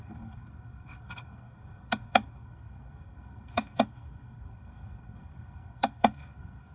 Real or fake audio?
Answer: fake